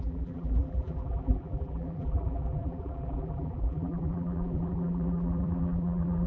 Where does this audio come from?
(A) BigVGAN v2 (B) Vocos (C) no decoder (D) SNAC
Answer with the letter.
A